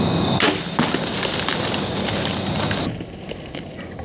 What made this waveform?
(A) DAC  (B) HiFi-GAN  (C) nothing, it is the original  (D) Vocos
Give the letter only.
C